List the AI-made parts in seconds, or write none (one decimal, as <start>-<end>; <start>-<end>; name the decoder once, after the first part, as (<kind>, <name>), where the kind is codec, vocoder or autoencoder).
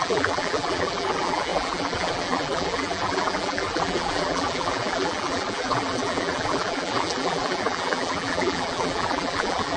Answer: 0.0-9.8 (vocoder, BigVGAN v2)